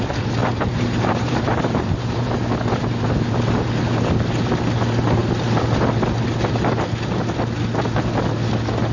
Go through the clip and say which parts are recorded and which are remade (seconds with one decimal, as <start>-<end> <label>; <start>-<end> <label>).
0.0-0.4 recorded; 0.4-2.3 remade; 2.3-8.9 recorded